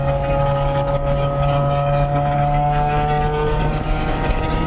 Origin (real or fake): fake